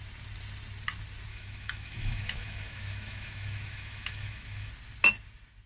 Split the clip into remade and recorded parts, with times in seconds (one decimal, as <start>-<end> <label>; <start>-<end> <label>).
0.0-1.3 recorded; 1.3-4.7 remade; 4.7-5.7 recorded